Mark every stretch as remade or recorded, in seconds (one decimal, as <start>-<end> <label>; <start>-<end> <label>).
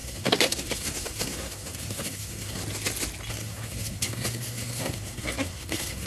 0.0-2.6 remade; 2.6-3.3 recorded; 3.3-6.1 remade